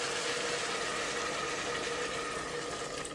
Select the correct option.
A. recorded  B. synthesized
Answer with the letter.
A